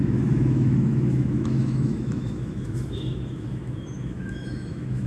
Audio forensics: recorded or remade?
remade